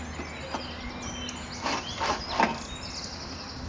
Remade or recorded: recorded